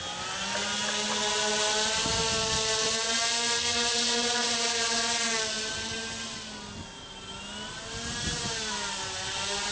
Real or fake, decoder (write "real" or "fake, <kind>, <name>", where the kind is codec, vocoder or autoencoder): real